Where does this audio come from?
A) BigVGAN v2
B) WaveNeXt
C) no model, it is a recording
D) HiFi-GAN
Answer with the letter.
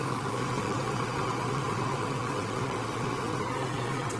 B